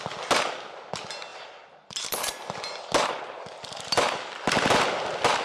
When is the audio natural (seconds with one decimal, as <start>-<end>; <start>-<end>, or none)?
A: 0.0-1.3; 2.8-5.4